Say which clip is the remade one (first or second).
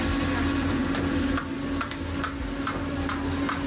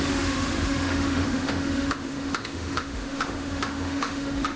second